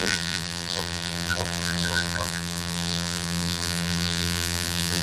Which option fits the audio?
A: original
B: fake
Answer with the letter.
B